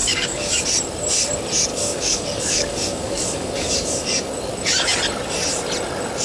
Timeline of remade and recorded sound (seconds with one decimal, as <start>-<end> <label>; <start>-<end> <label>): 0.0-0.6 remade; 0.6-1.7 recorded; 1.7-4.3 remade; 4.3-6.2 recorded